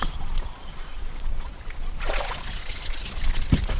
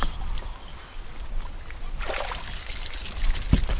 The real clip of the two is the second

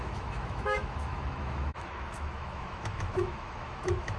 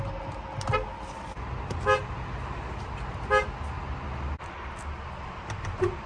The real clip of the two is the second